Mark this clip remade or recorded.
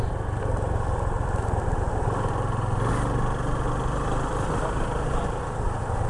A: recorded